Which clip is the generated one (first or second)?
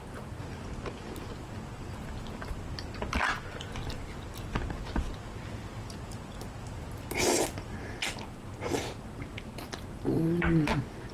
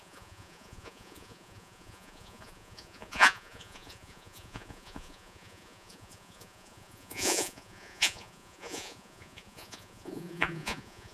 second